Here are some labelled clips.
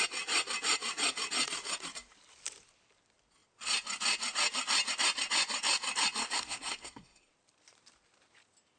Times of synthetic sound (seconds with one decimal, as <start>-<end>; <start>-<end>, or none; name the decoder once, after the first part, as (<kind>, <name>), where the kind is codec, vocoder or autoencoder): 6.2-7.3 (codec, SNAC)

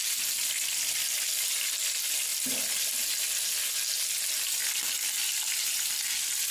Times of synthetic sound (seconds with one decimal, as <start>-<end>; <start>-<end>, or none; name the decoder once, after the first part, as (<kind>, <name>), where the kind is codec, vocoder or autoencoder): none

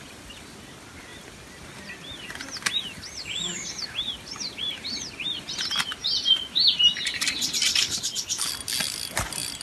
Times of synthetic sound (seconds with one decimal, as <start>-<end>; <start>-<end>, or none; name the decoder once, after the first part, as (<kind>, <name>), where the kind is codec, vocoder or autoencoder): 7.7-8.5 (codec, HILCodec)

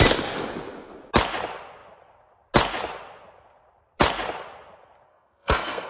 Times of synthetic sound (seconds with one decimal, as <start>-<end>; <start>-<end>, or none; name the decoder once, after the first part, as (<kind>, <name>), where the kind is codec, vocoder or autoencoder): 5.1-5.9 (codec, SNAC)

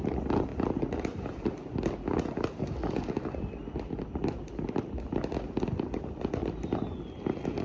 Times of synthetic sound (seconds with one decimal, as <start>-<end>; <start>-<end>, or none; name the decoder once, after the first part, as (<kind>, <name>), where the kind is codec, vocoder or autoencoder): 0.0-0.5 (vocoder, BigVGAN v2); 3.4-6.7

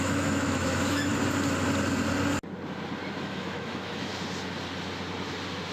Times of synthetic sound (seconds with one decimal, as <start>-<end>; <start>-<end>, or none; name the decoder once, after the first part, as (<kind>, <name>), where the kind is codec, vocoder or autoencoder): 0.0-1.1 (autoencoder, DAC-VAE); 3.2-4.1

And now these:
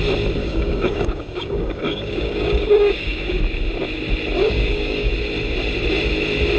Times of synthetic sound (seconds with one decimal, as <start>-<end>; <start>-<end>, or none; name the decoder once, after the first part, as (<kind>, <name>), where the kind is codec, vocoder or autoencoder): 0.4-3.4 (codec, DAC); 4.4-5.1